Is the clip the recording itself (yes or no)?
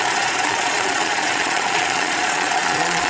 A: no